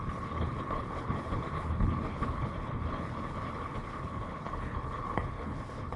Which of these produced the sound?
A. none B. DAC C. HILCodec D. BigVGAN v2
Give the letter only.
C